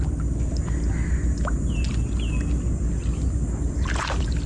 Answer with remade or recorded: recorded